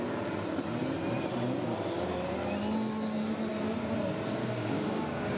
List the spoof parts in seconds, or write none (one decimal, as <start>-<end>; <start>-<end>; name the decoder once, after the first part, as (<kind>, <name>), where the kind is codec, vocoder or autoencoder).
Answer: 4.4-5.4 (codec, DAC)